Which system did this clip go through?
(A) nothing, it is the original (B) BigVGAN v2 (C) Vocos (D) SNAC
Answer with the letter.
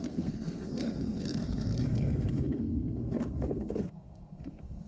D